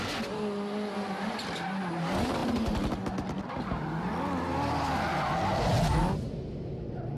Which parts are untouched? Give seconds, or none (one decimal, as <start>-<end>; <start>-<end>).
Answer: 0.0-7.2